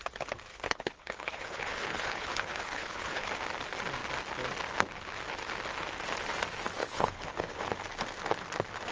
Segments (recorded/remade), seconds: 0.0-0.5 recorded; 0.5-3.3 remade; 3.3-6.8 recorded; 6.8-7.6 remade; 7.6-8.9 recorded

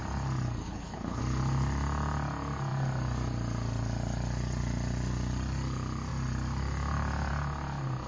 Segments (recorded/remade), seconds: 0.0-0.6 recorded; 0.6-1.2 remade; 1.2-8.1 recorded

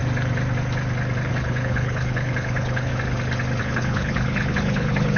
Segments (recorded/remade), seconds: 0.0-1.3 recorded; 1.3-2.9 remade; 2.9-3.6 recorded; 3.6-5.2 remade

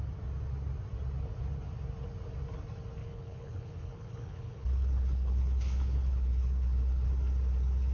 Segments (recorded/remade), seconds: 0.0-3.0 recorded; 3.0-7.1 remade; 7.1-7.9 recorded